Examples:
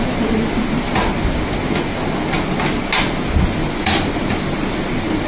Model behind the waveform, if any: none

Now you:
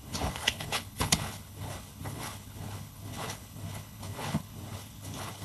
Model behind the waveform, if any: codec, HILCodec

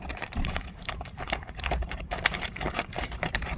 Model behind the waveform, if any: vocoder, BigVGAN v2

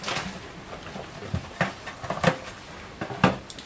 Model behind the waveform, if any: none